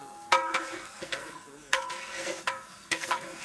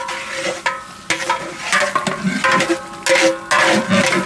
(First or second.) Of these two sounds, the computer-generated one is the first